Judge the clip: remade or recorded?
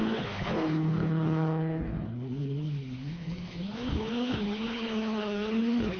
remade